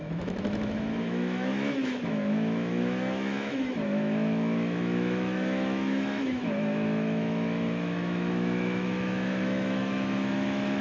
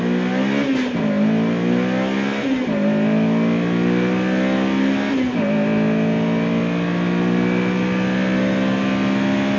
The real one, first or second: second